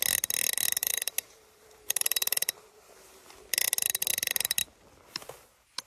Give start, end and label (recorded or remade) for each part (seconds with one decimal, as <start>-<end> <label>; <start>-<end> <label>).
0.0-0.8 recorded; 0.8-2.8 remade; 2.8-5.9 recorded